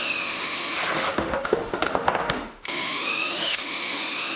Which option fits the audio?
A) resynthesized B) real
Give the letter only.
A